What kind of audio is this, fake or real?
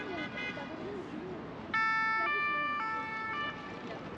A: real